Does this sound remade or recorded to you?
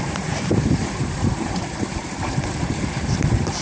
remade